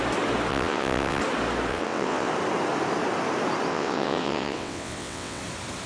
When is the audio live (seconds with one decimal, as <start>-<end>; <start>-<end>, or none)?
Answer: 0.0-0.5; 1.2-1.7; 2.3-3.7; 5.4-5.9